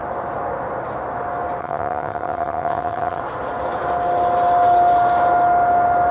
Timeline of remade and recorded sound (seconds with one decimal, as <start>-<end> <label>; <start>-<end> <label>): 0.0-1.6 recorded; 1.6-3.2 remade; 3.2-6.1 recorded